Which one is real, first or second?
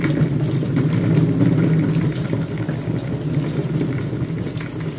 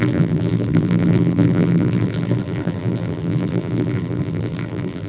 first